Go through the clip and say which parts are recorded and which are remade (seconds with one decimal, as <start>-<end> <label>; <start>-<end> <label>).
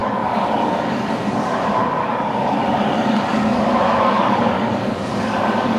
0.0-5.8 remade